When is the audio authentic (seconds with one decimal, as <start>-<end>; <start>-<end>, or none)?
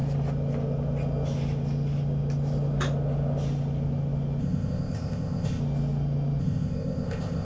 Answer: 0.0-4.4; 5.6-6.4